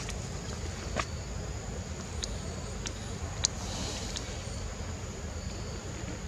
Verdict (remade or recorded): recorded